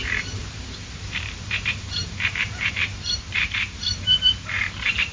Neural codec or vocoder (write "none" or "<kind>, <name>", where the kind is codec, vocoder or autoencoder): vocoder, BigVGAN v2